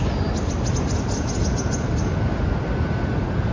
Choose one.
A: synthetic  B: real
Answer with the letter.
B